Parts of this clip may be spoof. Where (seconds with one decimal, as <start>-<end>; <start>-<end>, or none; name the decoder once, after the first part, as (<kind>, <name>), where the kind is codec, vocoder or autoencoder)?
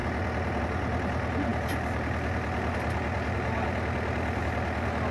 none